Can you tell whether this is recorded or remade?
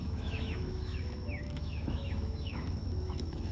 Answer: remade